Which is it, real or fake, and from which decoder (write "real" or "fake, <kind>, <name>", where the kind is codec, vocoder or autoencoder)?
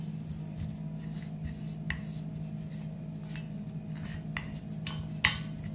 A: real